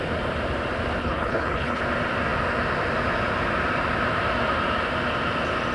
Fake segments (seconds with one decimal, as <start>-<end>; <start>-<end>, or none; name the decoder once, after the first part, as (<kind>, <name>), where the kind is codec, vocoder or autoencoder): 1.0-1.8 (codec, HILCodec)